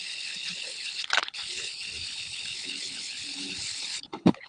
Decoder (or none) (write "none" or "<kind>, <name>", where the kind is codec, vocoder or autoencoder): codec, HILCodec